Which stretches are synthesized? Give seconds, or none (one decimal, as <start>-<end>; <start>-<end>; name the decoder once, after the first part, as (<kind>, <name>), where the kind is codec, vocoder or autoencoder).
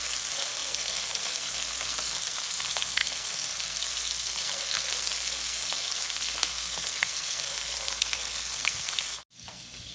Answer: 0.0-9.9 (codec, SNAC)